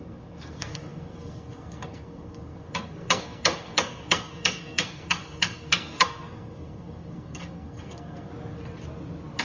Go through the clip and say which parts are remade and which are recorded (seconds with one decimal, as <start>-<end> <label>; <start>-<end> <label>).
0.0-8.3 remade; 8.3-9.4 recorded